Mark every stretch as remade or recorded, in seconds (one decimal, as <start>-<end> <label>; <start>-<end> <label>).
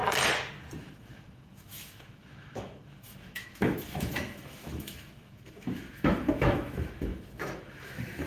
0.0-0.8 recorded; 0.8-8.3 remade